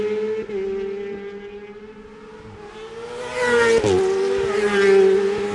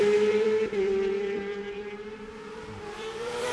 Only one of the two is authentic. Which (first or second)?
first